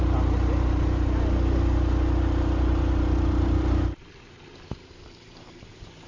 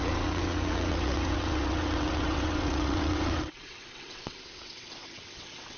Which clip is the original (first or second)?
first